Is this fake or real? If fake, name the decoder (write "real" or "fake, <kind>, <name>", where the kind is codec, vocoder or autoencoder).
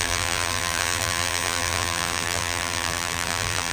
fake, vocoder, BigVGAN v2